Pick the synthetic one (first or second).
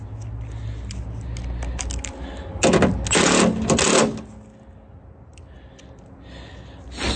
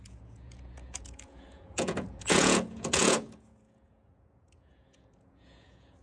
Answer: second